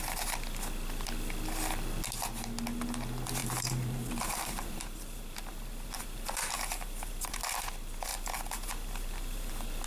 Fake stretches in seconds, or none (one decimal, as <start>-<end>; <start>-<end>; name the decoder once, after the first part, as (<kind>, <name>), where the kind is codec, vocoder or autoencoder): 3.4-7.4 (vocoder, BigVGAN v2); 8.1-9.5